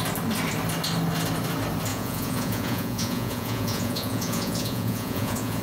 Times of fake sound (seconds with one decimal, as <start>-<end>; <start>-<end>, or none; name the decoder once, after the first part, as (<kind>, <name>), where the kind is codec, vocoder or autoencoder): 1.9-5.6 (vocoder, Vocos)